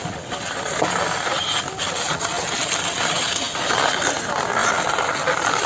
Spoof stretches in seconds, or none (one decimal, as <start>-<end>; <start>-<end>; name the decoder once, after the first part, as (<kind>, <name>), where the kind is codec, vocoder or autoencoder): 4.6-5.7 (vocoder, BigVGAN v2)